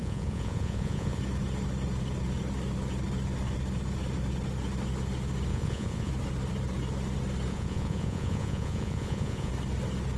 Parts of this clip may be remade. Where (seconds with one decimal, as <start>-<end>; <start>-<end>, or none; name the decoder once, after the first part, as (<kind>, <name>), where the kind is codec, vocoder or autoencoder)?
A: 0.0-1.2 (vocoder, Vocos); 5.5-6.1; 7.5-9.5

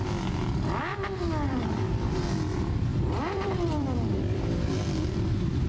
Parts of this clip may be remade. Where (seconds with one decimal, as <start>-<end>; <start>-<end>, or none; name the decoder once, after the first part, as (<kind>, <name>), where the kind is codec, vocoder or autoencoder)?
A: 0.9-2.2 (vocoder, BigVGAN v2); 2.9-4.5

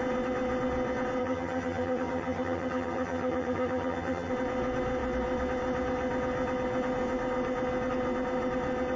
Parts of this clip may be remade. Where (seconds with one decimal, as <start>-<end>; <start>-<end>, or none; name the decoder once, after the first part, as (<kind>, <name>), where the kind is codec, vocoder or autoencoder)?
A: 1.2-4.3 (vocoder, HiFi-GAN)

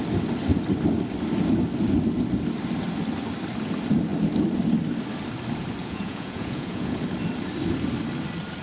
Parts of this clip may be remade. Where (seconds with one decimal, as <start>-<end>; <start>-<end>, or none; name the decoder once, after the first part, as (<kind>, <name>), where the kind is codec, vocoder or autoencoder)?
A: 5.8-7.0 (vocoder, Vocos)

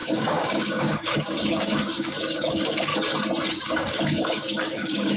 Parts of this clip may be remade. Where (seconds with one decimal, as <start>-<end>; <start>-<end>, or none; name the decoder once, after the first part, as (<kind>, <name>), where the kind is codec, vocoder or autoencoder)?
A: 0.0-2.9 (codec, DAC); 3.5-5.2

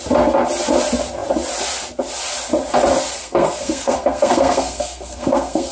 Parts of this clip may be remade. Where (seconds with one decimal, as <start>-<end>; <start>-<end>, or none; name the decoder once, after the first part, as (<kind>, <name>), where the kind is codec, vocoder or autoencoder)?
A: 3.2-5.7 (codec, SNAC)